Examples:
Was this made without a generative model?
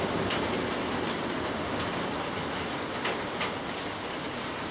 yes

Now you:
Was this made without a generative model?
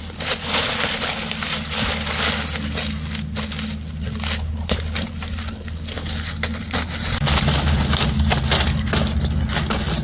yes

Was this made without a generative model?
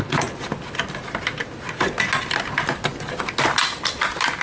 yes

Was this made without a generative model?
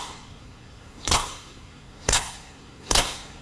no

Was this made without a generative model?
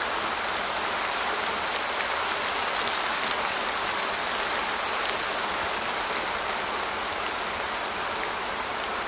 yes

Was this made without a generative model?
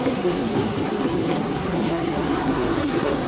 no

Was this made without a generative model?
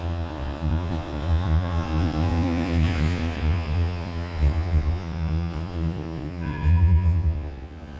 no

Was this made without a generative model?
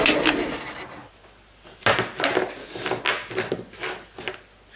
yes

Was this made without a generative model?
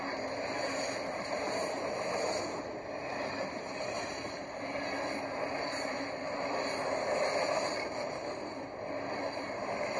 yes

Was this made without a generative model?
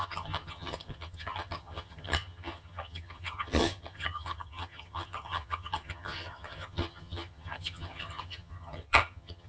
no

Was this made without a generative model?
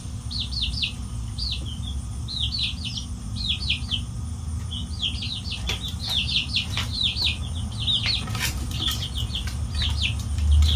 yes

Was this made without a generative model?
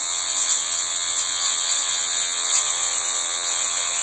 no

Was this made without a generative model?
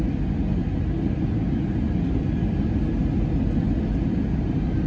yes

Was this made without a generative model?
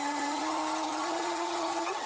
no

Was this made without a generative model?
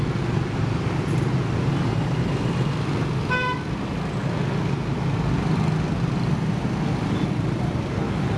yes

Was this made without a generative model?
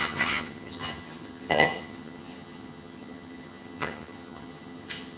no